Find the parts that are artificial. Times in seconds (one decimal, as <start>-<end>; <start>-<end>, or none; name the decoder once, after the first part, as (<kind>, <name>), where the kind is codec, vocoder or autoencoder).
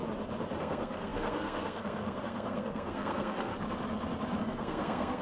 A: 0.6-3.5 (codec, SNAC); 4.4-5.2